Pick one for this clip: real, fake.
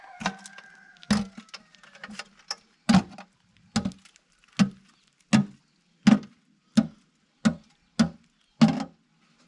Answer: real